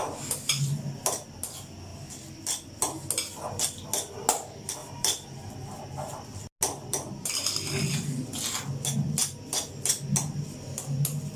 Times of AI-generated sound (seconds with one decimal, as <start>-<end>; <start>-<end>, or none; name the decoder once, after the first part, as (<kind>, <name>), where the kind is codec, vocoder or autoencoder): 1.9-2.4 (vocoder, BigVGAN v2); 4.8-5.5; 6.8-7.8